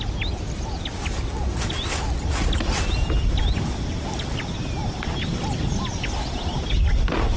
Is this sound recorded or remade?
recorded